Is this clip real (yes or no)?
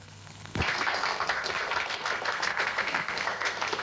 no